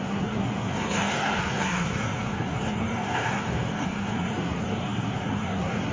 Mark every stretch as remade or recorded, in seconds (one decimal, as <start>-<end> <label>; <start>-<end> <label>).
0.0-5.9 remade